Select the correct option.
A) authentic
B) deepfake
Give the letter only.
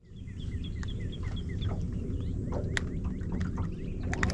A